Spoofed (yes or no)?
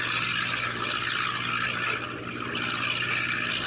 no